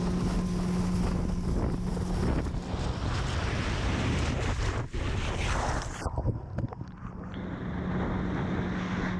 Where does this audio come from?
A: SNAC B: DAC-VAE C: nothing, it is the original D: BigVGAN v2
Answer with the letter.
C